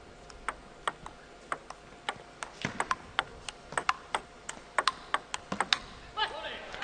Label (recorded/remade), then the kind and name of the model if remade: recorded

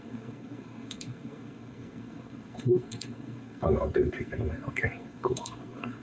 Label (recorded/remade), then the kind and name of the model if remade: remade, codec, SNAC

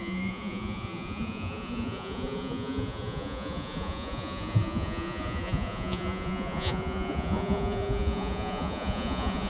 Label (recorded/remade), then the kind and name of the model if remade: remade, vocoder, Vocos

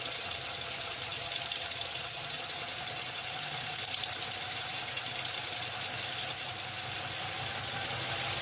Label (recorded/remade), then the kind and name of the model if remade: recorded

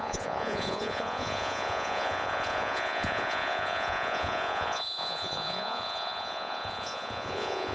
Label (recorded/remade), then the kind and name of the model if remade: remade, vocoder, Vocos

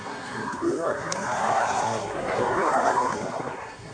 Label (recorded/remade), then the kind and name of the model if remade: remade, codec, SNAC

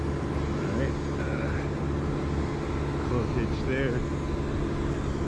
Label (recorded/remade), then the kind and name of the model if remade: recorded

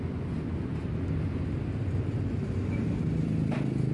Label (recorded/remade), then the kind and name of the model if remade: recorded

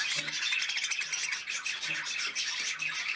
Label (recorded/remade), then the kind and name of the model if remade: recorded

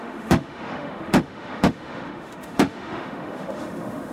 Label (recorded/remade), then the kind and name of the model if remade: remade, autoencoder, DAC-VAE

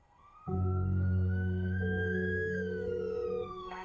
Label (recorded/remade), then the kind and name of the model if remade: remade, codec, SNAC